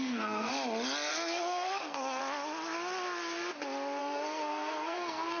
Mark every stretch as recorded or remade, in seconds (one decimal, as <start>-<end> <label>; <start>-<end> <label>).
0.0-0.5 remade; 0.5-1.1 recorded; 1.1-2.2 remade; 2.2-4.0 recorded; 4.0-5.4 remade